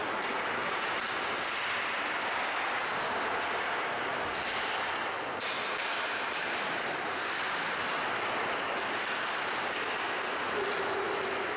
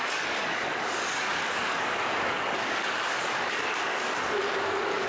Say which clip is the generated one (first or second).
second